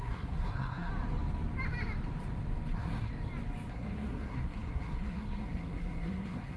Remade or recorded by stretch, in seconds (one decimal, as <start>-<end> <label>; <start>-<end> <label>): 0.0-0.9 remade; 0.9-2.7 recorded; 2.7-3.1 remade; 3.1-3.7 recorded; 3.7-6.6 remade